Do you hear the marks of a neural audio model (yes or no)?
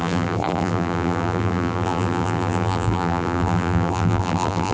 yes